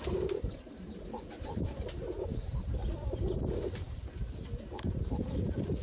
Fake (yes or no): yes